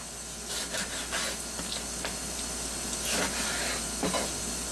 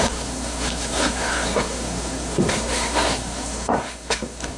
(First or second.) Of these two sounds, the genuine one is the first